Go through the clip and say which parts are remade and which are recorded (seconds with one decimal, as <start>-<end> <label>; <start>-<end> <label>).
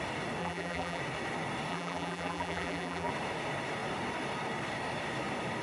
0.0-0.4 recorded; 0.4-1.0 remade; 1.0-1.7 recorded; 1.7-3.1 remade; 3.1-5.6 recorded